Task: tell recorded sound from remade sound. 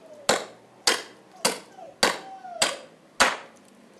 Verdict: recorded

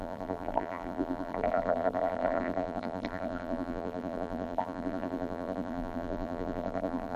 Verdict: remade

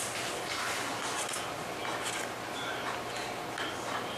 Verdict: recorded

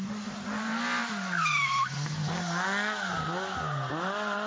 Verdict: recorded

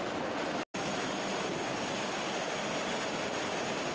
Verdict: recorded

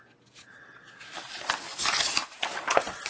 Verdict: recorded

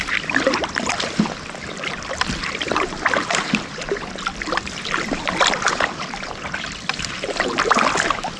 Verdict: recorded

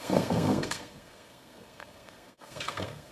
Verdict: remade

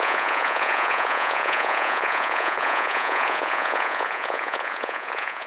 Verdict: remade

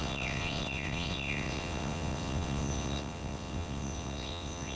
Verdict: remade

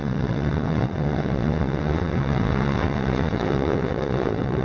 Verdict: remade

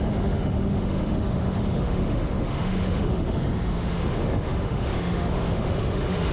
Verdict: remade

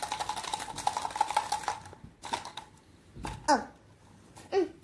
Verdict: recorded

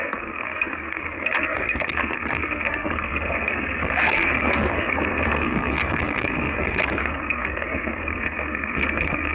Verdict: remade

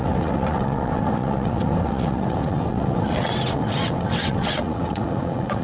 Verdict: remade